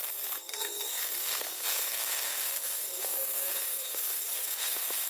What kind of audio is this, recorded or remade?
remade